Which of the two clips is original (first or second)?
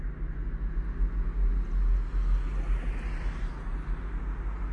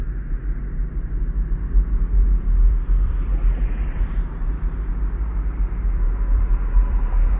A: first